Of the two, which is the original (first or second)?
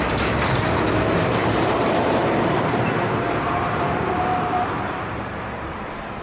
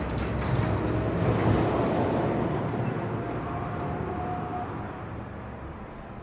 second